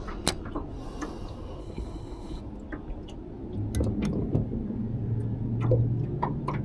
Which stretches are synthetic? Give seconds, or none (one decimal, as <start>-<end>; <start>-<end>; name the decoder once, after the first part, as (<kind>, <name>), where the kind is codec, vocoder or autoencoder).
1.6-2.4 (codec, HILCodec)